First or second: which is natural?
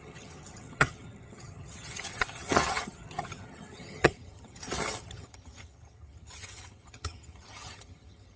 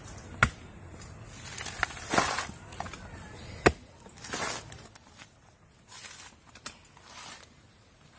second